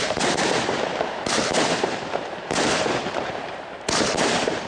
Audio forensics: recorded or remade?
remade